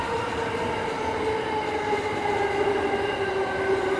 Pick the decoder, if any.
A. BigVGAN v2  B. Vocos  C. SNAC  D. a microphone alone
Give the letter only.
D